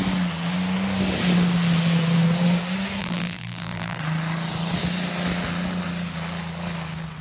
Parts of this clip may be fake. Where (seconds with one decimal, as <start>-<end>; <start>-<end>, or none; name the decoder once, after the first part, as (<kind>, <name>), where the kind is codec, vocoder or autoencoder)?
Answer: 3.0-4.0 (vocoder, BigVGAN v2)